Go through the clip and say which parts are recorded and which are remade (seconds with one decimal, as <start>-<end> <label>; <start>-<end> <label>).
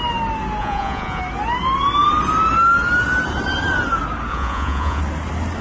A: 0.0-0.6 recorded; 0.6-1.2 remade; 1.2-4.3 recorded; 4.3-5.0 remade; 5.0-5.6 recorded